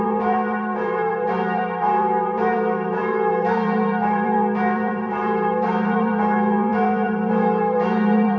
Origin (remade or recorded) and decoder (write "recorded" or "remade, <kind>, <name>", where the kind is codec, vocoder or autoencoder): remade, vocoder, BigVGAN v2